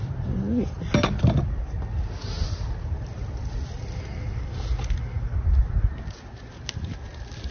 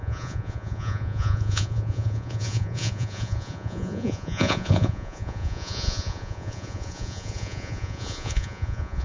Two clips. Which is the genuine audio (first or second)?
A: first